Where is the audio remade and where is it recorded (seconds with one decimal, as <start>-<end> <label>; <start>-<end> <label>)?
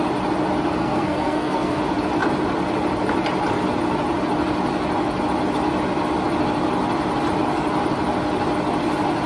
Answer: 0.0-0.8 recorded; 0.8-1.8 remade; 1.8-9.3 recorded